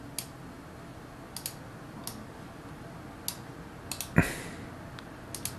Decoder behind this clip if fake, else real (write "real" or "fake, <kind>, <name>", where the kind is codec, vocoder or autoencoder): real